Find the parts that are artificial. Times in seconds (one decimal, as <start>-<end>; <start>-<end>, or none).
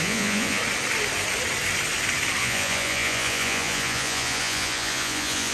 0.0-0.6; 2.4-5.5